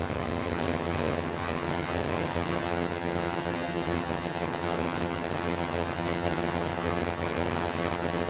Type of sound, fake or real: fake